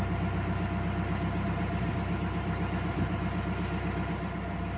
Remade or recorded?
recorded